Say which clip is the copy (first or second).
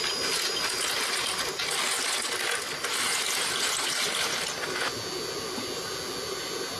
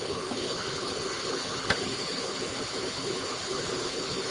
second